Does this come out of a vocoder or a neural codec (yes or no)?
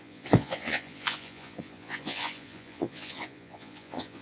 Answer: yes